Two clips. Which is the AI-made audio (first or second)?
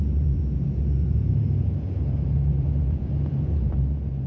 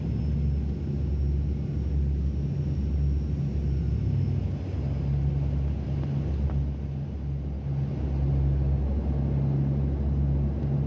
first